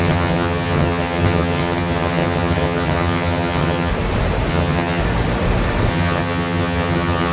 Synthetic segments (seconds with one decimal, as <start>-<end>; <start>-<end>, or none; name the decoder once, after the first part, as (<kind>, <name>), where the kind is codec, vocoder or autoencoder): 0.0-3.9 (vocoder, HiFi-GAN); 4.5-5.0; 5.9-7.3